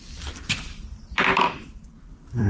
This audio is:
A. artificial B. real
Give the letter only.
A